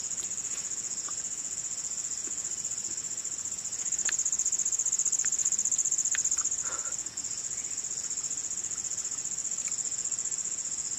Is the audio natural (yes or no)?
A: no